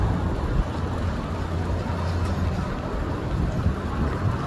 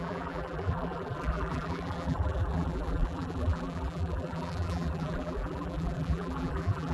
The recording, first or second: first